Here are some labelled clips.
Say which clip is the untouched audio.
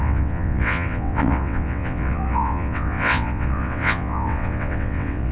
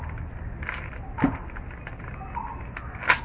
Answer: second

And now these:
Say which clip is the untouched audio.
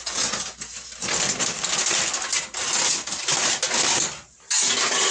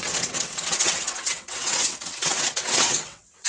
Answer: first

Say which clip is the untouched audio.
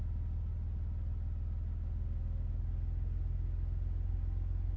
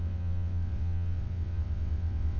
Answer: first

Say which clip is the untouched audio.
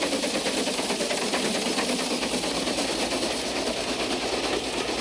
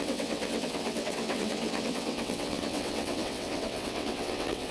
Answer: first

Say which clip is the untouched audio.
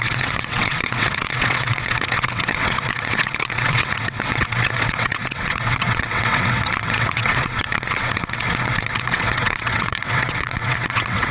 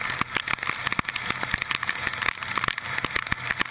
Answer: second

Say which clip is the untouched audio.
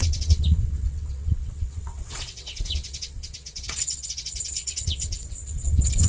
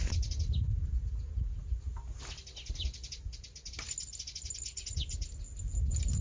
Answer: second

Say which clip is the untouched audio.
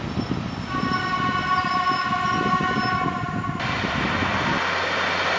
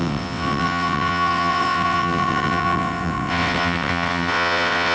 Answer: first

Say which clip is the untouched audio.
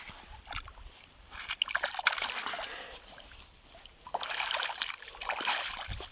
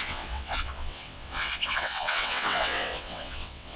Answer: first